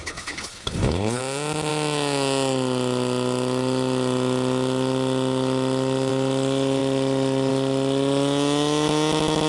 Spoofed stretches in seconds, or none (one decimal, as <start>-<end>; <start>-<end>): 0.0-1.2